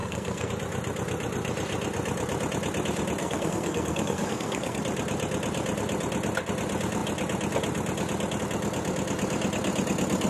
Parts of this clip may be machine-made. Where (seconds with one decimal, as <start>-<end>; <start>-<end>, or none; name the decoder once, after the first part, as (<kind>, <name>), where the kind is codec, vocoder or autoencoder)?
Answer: 0.0-0.5 (codec, SNAC); 3.2-4.8